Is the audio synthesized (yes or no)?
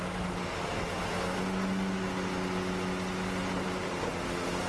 no